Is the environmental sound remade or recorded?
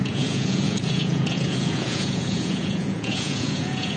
remade